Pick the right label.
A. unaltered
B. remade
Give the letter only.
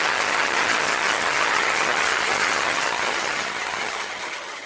B